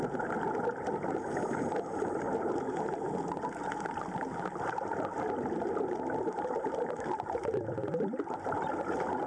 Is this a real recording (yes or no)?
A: yes